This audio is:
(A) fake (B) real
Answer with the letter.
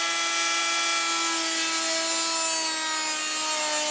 B